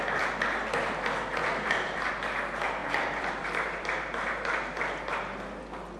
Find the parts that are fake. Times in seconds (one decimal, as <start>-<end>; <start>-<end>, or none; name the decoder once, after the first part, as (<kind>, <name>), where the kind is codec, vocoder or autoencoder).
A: 1.4-2.1 (vocoder, BigVGAN v2); 2.8-4.0